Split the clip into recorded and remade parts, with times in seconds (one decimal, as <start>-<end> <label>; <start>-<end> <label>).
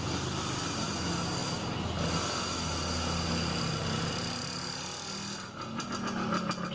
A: 0.0-6.7 recorded